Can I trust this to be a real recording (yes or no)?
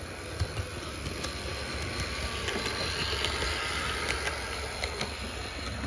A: yes